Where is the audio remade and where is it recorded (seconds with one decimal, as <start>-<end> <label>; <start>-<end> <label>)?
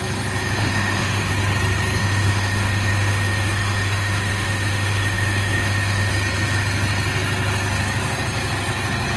0.0-0.6 recorded; 0.6-1.3 remade; 1.3-2.0 recorded; 2.0-6.1 remade; 6.1-9.2 recorded